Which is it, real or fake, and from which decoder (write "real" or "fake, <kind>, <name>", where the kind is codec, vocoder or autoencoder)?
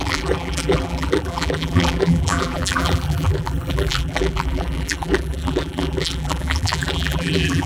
fake, vocoder, BigVGAN v2